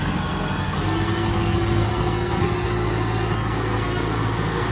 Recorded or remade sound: remade